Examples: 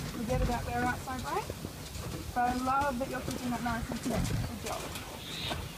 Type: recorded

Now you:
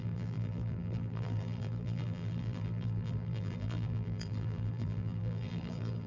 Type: remade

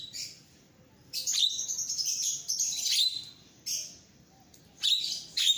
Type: remade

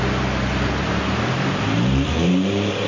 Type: remade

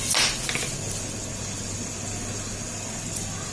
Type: recorded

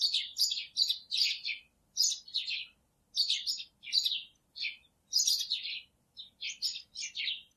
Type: recorded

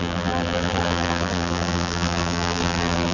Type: remade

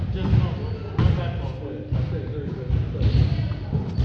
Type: recorded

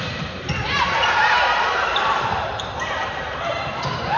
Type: remade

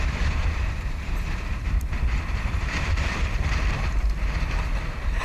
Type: remade